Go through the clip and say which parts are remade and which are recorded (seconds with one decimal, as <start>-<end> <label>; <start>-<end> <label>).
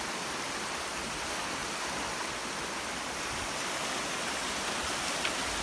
0.0-5.6 recorded